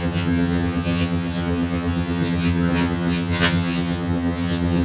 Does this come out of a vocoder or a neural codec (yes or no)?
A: yes